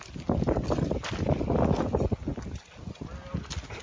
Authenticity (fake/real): real